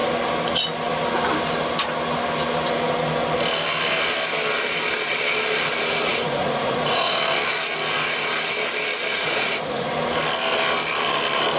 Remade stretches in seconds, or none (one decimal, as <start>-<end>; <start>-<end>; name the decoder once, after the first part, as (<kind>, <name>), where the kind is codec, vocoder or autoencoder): 6.1-7.2 (vocoder, Vocos); 9.1-9.9